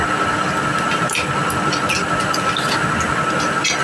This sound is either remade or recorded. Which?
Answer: recorded